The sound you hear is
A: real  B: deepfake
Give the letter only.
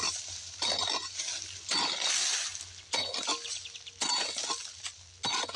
A